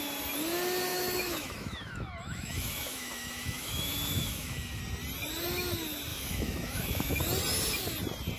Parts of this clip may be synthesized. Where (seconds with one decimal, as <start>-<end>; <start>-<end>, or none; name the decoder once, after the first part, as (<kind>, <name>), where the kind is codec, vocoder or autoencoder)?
0.9-4.8 (autoencoder, DAC-VAE); 6.1-7.2